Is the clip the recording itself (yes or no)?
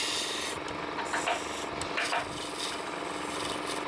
yes